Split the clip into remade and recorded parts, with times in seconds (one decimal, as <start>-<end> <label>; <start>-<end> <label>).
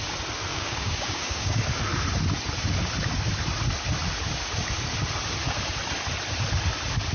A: 0.0-0.5 recorded; 0.5-1.6 remade; 1.6-7.1 recorded